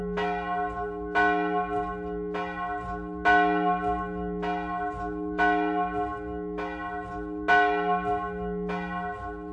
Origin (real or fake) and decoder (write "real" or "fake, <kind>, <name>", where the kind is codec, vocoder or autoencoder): real